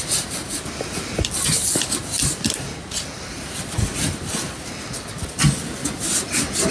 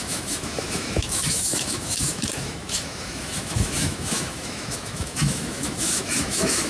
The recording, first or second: first